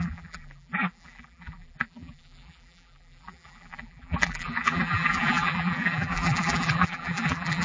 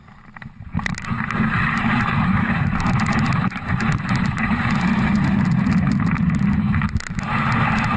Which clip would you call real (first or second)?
second